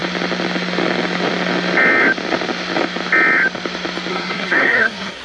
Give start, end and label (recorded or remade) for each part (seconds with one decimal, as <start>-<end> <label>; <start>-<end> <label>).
0.0-4.1 recorded; 4.1-5.2 remade